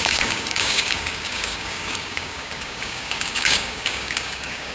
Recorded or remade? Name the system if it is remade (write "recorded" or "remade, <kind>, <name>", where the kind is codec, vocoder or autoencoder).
remade, codec, DAC